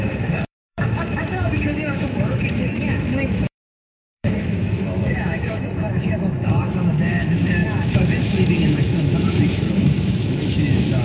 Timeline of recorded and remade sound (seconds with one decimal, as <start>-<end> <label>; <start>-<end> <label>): 0.0-11.0 remade